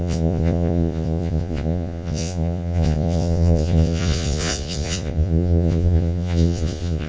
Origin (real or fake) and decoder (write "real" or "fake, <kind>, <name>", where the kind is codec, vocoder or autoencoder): fake, vocoder, Vocos